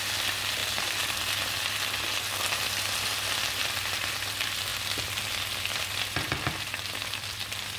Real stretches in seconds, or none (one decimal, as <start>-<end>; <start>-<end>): 0.0-4.7